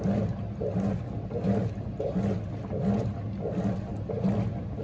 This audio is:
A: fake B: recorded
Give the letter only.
B